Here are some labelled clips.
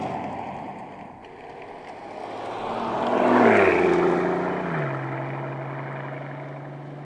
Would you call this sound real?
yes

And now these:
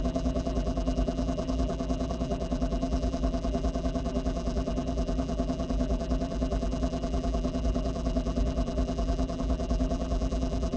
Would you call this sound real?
no